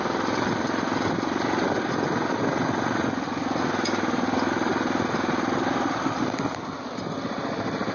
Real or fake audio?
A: real